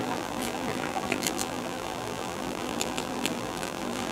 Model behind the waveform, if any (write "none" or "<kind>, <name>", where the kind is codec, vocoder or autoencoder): vocoder, BigVGAN v2